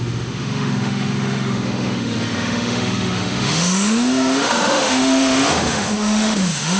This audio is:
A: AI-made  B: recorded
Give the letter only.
A